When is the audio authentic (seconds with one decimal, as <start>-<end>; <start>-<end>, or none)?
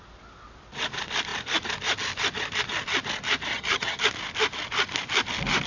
0.0-3.5; 4.0-5.7